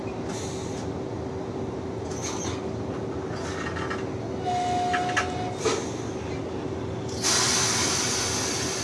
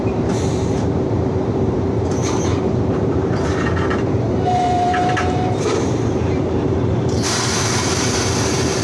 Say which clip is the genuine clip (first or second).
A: first